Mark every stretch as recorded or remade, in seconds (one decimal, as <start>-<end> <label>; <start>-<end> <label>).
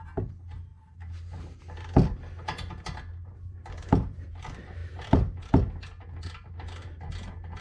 0.0-0.7 recorded; 0.7-1.6 remade; 1.6-3.3 recorded; 3.3-4.3 remade; 4.3-4.8 recorded; 4.8-5.4 remade; 5.4-7.6 recorded